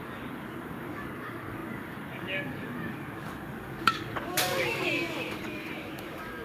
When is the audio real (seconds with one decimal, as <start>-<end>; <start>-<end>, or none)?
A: none